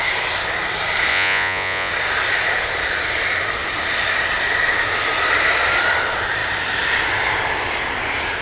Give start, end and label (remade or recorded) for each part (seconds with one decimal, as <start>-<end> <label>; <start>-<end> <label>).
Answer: 0.0-1.1 recorded; 1.1-1.9 remade; 1.9-8.4 recorded